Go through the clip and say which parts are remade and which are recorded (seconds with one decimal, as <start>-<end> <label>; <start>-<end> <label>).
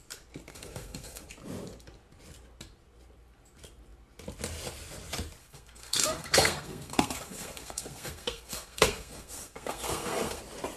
0.0-0.5 recorded; 0.5-1.2 remade; 1.2-5.4 recorded; 5.4-10.4 remade; 10.4-10.8 recorded